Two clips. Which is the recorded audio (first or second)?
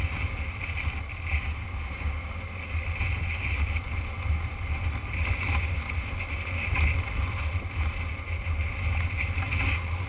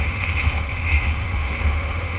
first